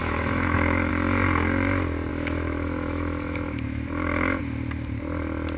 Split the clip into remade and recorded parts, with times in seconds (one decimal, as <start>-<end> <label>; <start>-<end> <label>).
0.0-0.9 remade; 0.9-2.1 recorded; 2.1-4.4 remade; 4.4-5.6 recorded